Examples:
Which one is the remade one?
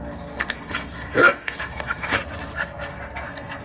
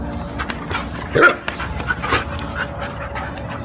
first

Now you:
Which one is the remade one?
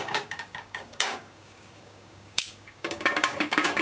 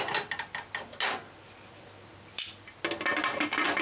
first